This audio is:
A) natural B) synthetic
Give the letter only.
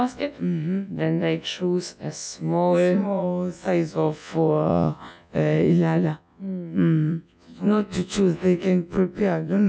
B